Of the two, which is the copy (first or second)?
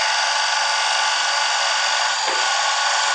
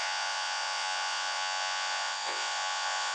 second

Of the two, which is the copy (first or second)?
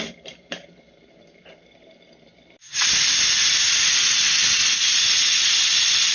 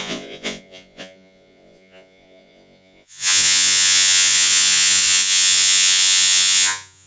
second